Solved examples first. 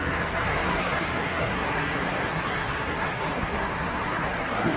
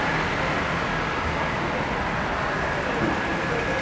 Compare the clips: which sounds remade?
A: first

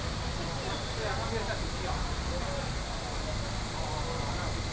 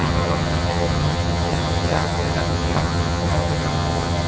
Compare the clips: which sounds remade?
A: second